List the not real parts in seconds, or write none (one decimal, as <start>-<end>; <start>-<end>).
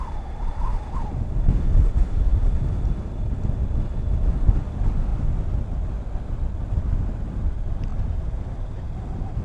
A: 7.9-8.4